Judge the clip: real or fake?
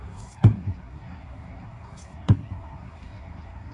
fake